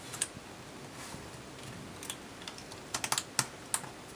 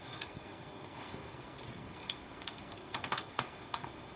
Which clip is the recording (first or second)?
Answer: first